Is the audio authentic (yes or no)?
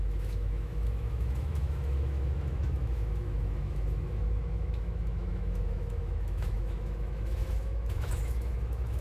no